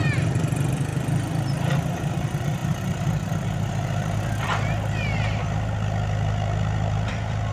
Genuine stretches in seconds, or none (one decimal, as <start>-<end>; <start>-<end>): 0.0-7.5